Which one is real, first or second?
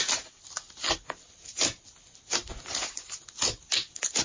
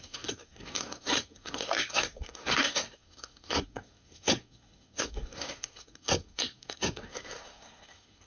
first